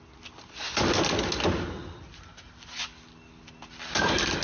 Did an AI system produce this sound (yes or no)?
no